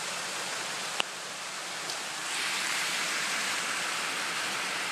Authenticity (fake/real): fake